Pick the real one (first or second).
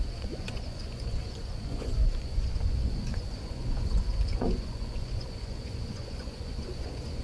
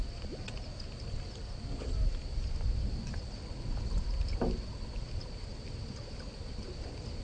second